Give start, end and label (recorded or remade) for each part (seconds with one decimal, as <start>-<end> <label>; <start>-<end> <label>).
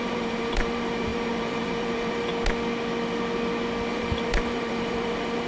0.0-2.3 remade; 2.3-3.9 recorded; 3.9-5.5 remade